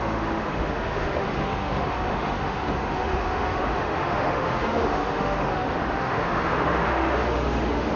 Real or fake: fake